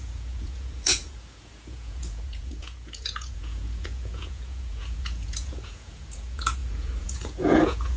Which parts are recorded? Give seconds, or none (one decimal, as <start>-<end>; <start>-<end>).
none